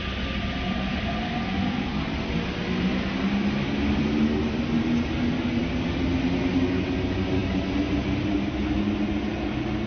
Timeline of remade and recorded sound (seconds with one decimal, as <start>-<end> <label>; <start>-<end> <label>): 0.0-9.9 recorded